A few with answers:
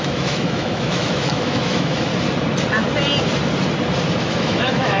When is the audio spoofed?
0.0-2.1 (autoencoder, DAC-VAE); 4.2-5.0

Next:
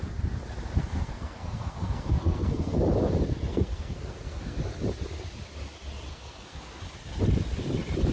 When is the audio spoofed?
0.8-2.8 (codec, SNAC); 3.5-4.6; 6.1-6.8

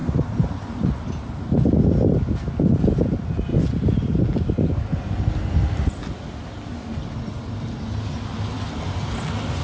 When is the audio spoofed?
none

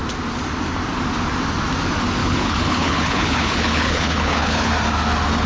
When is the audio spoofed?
2.2-4.7 (codec, HILCodec)

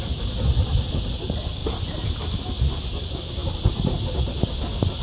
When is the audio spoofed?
none